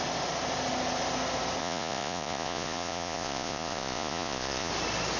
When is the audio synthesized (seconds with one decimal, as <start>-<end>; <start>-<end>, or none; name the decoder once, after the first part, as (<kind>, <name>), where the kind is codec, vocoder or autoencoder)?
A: 1.6-4.7 (vocoder, Vocos)